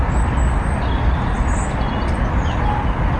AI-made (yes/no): no